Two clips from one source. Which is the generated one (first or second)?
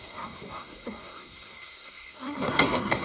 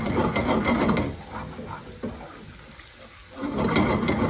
first